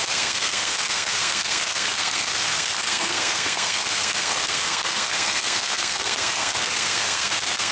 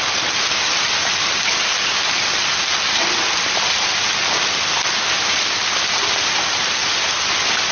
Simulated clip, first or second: first